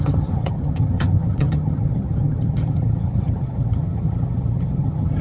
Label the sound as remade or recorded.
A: remade